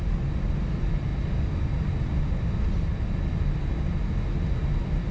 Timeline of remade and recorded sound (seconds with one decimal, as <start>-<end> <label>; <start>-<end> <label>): 0.0-5.1 recorded